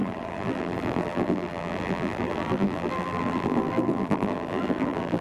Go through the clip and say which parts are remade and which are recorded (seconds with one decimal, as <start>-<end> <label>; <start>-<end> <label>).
0.0-5.2 remade